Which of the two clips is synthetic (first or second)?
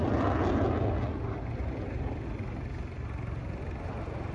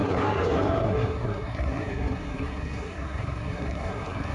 second